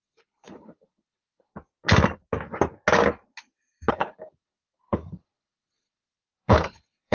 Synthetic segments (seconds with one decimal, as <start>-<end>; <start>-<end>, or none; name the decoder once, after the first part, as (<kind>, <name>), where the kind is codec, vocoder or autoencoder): 0.0-1.5 (codec, HILCodec); 3.9-7.1